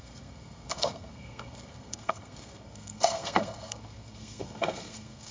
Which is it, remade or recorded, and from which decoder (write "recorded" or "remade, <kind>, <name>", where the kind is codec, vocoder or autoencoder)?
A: remade, codec, SNAC